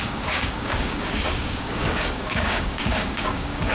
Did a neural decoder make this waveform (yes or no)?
yes